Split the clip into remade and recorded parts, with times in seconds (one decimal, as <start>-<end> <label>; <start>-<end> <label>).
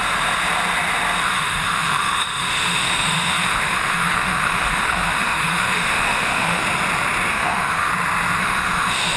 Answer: 0.0-1.2 recorded; 1.2-6.6 remade; 6.6-7.3 recorded; 7.3-7.9 remade; 7.9-8.4 recorded; 8.4-9.2 remade